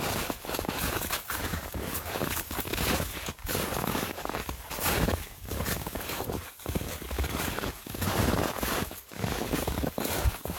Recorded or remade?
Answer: remade